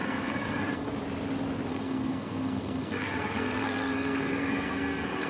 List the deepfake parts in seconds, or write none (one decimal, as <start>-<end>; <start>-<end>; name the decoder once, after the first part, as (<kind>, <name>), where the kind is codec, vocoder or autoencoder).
0.0-0.9 (codec, SNAC); 1.7-5.3